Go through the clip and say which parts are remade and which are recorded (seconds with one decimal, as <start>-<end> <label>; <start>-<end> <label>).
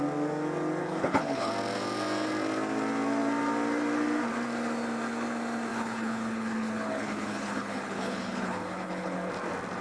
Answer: 0.0-0.8 recorded; 0.8-1.5 remade; 1.5-5.7 recorded; 5.7-9.3 remade; 9.3-9.8 recorded